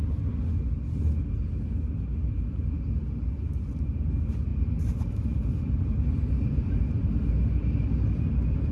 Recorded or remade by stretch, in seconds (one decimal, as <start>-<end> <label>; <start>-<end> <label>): 0.0-4.5 recorded; 4.5-7.1 remade; 7.1-8.7 recorded